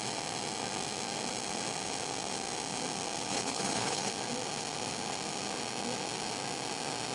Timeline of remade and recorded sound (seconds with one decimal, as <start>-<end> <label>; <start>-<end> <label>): 0.0-3.3 recorded; 3.3-4.1 remade; 4.1-7.1 recorded